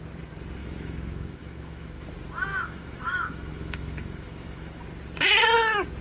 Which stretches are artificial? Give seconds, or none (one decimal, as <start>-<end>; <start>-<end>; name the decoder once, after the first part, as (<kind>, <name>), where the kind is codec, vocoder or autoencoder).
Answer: 0.6-2.1 (autoencoder, DAC-VAE); 2.5-4.8